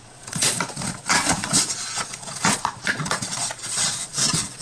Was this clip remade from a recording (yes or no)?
yes